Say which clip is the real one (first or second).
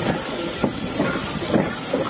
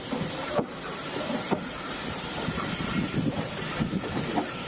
first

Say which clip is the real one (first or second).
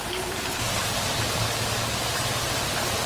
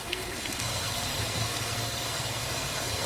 first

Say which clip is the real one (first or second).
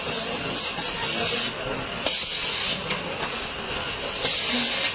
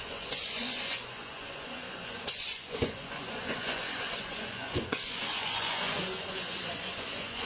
first